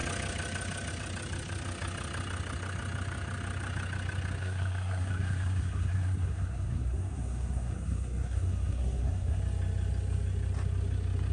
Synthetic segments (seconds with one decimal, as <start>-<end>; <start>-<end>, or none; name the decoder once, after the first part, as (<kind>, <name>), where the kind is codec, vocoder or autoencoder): 4.4-9.4 (codec, SNAC)